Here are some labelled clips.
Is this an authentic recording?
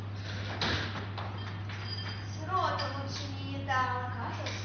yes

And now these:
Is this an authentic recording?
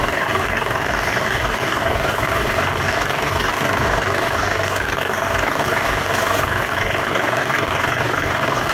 no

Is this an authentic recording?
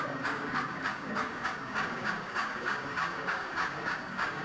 no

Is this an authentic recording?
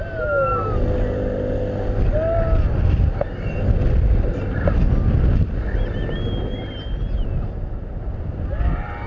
yes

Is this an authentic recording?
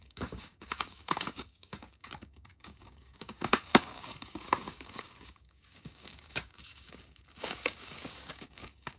no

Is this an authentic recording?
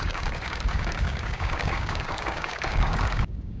no